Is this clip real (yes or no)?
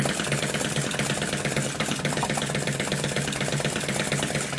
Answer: yes